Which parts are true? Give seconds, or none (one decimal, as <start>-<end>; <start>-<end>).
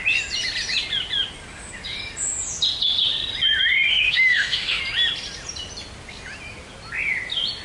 0.0-3.9; 4.8-7.6